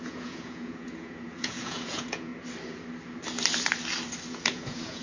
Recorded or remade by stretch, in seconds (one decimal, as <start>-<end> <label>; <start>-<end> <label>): 0.0-2.3 remade; 2.3-4.3 recorded; 4.3-5.0 remade